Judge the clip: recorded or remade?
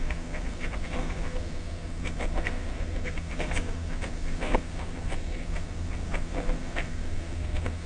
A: remade